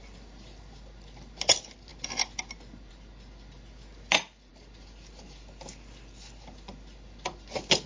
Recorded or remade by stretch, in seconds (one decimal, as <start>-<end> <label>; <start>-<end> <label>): 0.0-7.9 recorded